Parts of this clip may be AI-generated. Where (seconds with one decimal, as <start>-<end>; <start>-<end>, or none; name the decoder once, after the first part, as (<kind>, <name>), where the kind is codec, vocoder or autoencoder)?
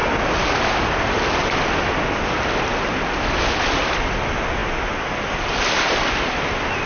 none